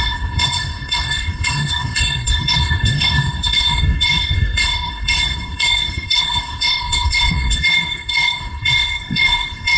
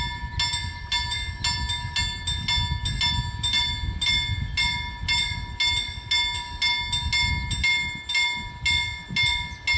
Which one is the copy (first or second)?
first